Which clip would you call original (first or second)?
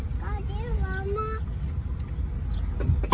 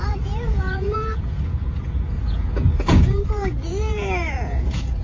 first